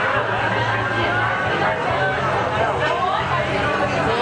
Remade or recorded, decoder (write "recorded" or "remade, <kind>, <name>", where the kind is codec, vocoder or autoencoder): recorded